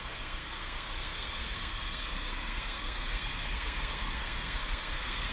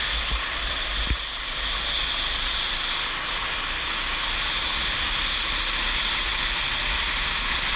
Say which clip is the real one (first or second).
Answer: second